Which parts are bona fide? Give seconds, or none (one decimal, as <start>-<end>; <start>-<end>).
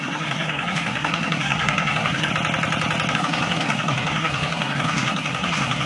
2.3-3.1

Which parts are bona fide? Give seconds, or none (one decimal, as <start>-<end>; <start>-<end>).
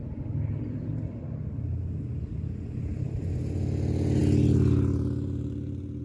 0.0-6.0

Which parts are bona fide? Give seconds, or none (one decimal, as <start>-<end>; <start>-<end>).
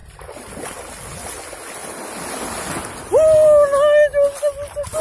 0.0-5.0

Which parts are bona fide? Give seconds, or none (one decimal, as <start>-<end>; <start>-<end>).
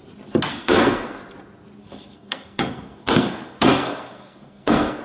0.0-0.5; 1.2-1.8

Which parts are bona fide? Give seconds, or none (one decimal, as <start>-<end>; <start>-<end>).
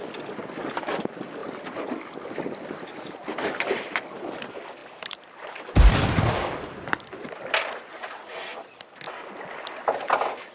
0.0-4.8; 5.6-10.5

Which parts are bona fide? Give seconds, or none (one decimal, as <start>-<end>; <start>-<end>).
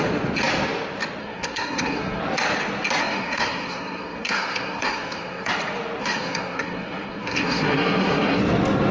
0.0-1.2; 2.2-3.0; 5.5-6.0; 8.4-8.9